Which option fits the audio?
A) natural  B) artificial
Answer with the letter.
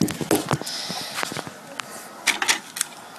A